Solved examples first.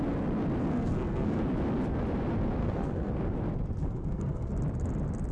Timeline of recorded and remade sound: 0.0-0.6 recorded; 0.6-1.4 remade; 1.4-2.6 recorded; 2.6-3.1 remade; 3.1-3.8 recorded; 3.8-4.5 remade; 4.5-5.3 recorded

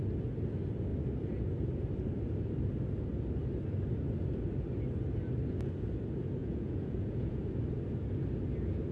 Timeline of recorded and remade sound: 0.0-6.4 recorded; 6.4-7.4 remade; 7.4-8.9 recorded

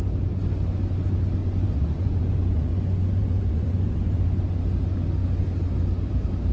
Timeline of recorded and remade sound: 0.0-1.4 recorded; 1.4-4.2 remade; 4.2-6.5 recorded